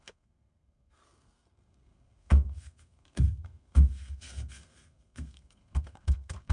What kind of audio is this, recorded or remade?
remade